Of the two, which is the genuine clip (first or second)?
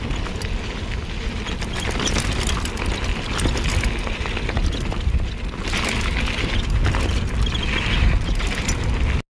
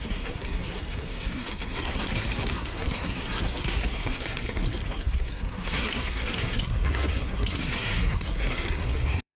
first